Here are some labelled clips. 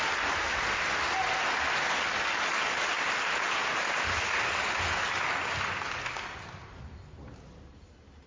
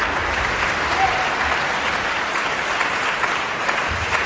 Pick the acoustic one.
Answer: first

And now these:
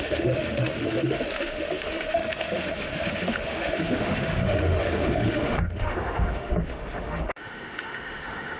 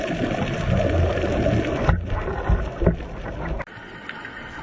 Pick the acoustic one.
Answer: second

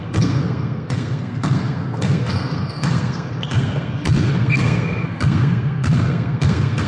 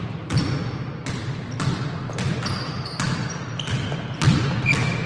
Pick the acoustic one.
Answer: second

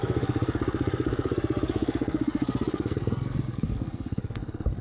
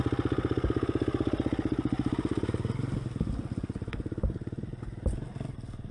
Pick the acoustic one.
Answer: second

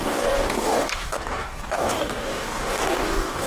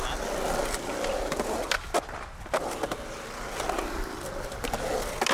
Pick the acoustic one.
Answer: second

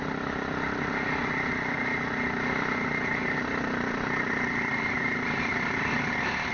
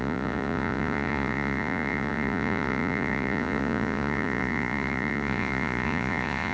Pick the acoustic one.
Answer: first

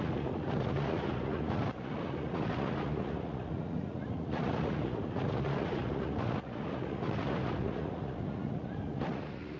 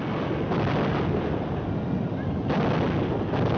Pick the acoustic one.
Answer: second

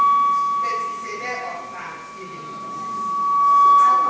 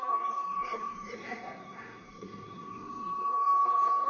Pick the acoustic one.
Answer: first